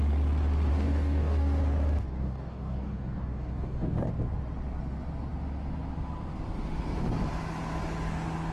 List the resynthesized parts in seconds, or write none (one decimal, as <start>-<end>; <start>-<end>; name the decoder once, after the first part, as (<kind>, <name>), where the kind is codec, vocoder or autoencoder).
0.7-1.6 (codec, DAC); 2.0-4.1